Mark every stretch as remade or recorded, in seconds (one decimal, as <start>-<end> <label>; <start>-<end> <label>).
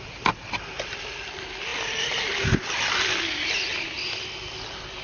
0.0-5.0 recorded